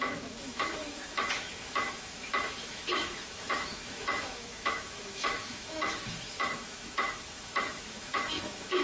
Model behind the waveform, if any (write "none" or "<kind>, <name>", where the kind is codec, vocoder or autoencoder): autoencoder, DAC-VAE